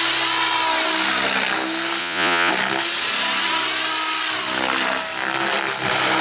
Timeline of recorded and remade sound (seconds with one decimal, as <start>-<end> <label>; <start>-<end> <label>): 0.0-2.0 recorded; 2.0-2.5 remade; 2.5-6.2 recorded